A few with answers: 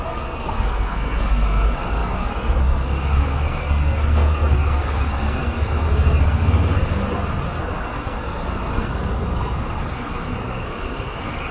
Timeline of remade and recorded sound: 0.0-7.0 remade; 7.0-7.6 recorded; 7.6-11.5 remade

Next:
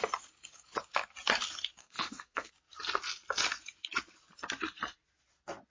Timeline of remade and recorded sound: 0.0-1.8 recorded; 1.8-2.5 remade; 2.5-5.7 recorded